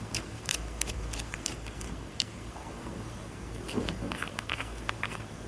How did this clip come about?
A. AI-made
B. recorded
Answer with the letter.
A